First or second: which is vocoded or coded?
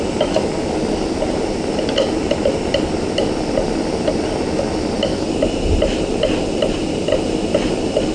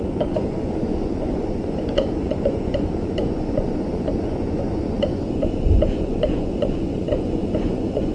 second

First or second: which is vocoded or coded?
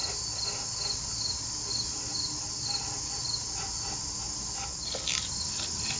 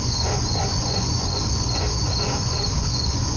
second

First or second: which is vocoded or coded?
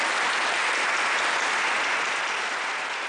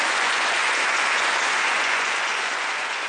second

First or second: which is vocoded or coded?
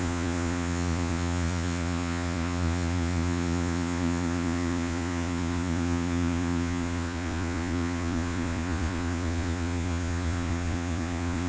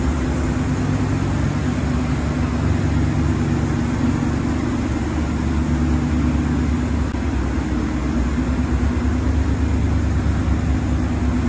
first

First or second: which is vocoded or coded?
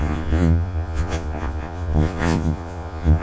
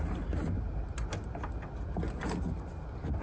first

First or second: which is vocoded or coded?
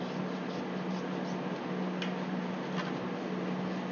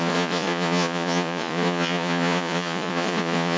second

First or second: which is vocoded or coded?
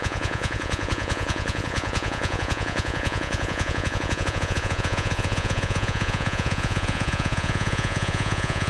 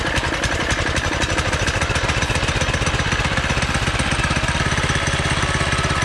first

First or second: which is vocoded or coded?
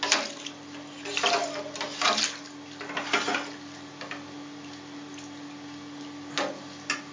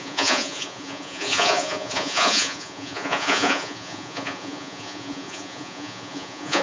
second